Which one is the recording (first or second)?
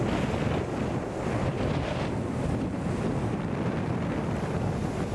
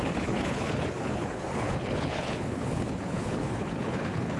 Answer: first